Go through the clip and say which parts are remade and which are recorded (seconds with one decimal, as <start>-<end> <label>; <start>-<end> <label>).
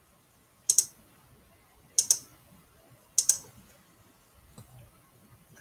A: 0.0-5.6 recorded